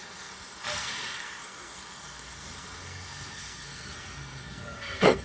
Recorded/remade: remade